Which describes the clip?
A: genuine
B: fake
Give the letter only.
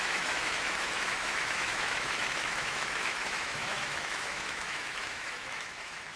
B